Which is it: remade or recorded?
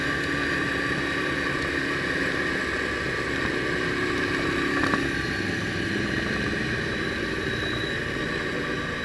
recorded